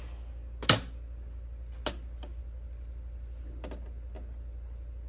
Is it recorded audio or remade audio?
recorded